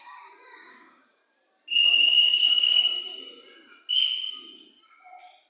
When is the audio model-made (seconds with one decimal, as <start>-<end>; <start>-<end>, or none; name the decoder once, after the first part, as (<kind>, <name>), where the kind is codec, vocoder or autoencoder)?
0.0-1.2 (codec, DAC); 2.0-3.1